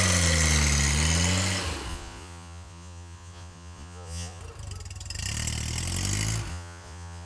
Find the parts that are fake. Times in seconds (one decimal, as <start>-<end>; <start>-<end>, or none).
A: 1.9-4.4; 6.5-7.3